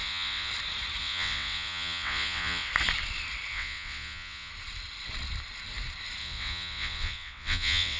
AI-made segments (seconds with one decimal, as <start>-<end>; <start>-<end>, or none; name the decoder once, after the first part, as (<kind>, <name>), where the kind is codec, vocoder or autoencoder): 0.0-0.5 (vocoder, WaveNeXt); 1.0-2.7; 3.5-4.5; 6.2-8.0